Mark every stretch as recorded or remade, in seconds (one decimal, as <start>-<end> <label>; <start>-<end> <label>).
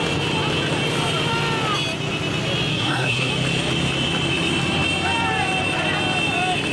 0.0-2.7 recorded; 2.7-3.3 remade; 3.3-6.7 recorded